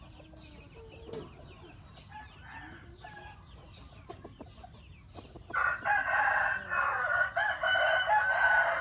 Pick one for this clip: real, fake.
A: real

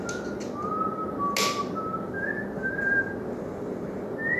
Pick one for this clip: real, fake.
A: real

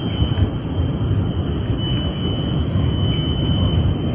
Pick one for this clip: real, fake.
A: real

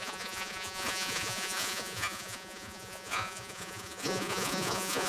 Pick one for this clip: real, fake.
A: fake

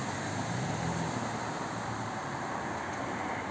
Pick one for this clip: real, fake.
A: real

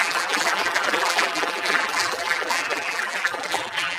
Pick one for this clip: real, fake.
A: fake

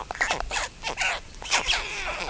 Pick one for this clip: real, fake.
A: real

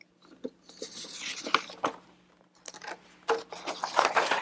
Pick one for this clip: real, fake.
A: real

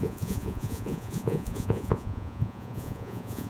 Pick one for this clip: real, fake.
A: fake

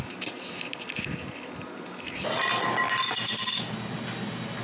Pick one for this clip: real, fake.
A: real